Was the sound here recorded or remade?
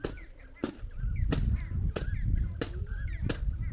recorded